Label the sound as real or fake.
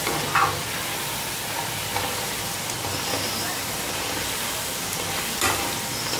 real